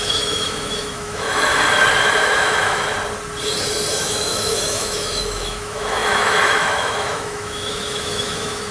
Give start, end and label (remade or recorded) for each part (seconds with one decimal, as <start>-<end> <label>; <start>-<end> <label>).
0.0-1.5 remade; 1.5-2.2 recorded; 2.2-2.9 remade; 2.9-4.0 recorded; 4.0-8.7 remade